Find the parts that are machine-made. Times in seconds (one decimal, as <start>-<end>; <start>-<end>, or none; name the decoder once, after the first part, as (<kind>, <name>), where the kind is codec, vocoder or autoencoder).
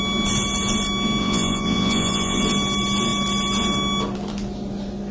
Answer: 1.2-2.4 (vocoder, Vocos)